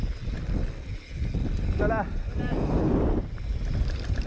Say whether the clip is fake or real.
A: real